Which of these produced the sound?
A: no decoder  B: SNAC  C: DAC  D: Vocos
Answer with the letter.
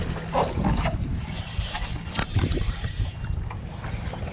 A